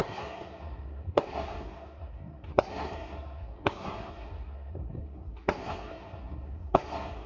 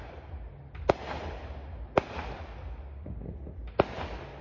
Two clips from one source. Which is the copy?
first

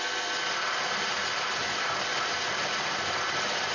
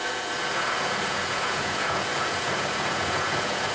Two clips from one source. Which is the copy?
second